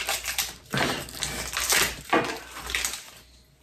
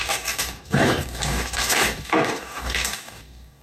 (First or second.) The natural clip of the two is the first